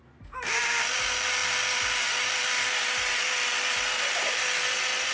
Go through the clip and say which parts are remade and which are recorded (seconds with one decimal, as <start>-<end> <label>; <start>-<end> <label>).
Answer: 0.0-5.1 recorded